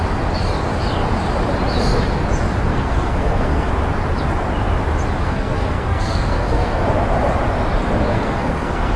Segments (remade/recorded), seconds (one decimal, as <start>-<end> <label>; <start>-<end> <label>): 0.0-2.7 recorded; 2.7-3.7 remade; 3.7-5.2 recorded; 5.2-6.8 remade; 6.8-8.1 recorded; 8.1-9.0 remade